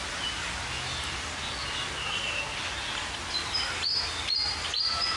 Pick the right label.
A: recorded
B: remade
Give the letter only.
A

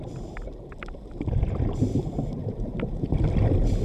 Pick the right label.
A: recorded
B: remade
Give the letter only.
B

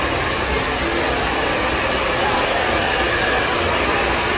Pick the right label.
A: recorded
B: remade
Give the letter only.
A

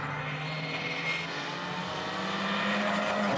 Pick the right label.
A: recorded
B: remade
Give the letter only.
A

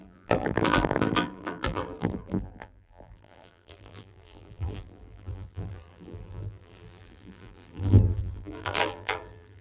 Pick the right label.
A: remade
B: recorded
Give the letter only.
A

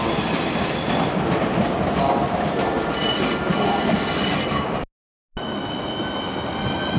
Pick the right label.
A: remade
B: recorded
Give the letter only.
B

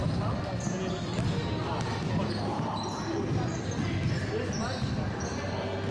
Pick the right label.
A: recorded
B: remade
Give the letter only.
A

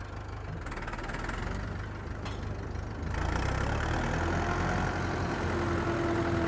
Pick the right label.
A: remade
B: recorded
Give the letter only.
B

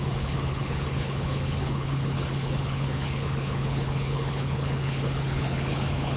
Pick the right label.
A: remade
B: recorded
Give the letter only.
A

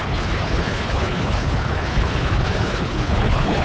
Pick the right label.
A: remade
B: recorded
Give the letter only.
A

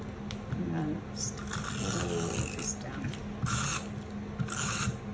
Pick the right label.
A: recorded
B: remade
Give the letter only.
A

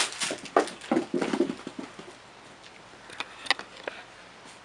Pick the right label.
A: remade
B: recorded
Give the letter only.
B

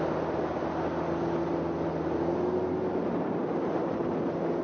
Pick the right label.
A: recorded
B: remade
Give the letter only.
A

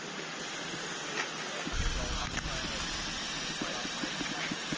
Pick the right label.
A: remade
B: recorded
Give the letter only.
B